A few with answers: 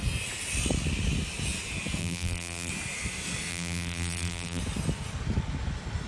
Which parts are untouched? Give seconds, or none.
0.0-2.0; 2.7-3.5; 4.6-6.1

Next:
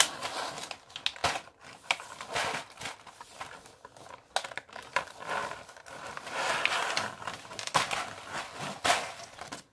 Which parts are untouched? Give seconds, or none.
0.0-9.7

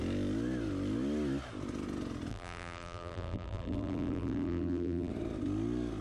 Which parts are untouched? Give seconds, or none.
0.0-2.3; 5.1-6.0